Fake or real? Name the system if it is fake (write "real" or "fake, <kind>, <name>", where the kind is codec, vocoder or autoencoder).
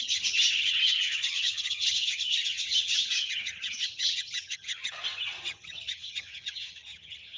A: fake, vocoder, HiFi-GAN